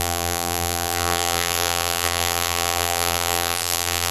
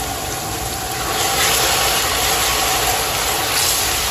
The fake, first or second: first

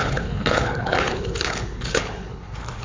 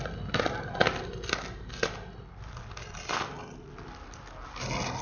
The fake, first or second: first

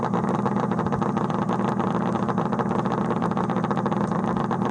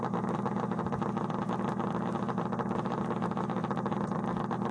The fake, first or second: first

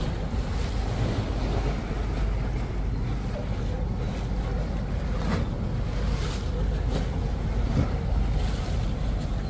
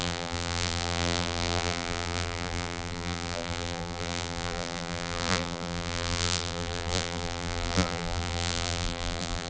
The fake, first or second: second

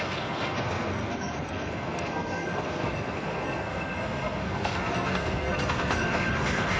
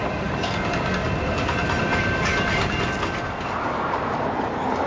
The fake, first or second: first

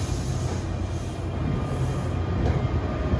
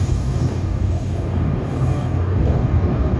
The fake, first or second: second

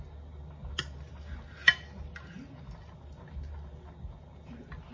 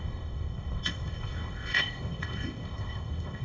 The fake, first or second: second